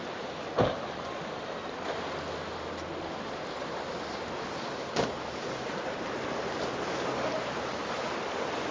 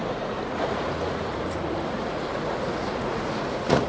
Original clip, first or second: first